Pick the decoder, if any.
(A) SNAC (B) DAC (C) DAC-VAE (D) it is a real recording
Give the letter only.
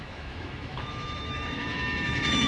C